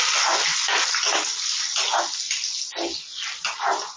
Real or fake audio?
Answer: real